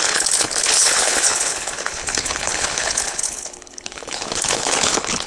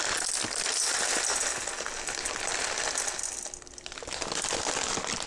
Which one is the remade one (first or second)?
first